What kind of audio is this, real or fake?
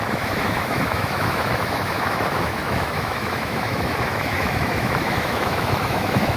fake